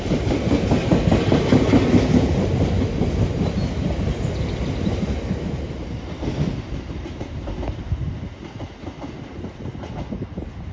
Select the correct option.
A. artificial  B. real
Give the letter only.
B